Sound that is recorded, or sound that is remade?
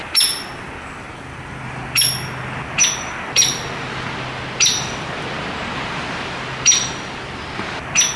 recorded